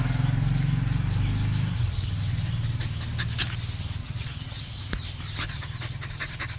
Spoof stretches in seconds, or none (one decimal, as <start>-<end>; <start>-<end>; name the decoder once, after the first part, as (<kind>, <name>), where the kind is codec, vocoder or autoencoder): 4.0-4.8 (vocoder, WaveNeXt)